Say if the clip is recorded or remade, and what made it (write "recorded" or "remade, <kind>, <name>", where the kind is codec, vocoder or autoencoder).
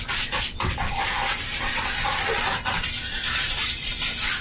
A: recorded